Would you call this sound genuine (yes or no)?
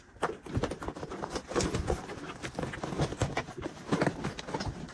yes